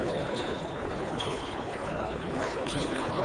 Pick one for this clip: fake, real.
fake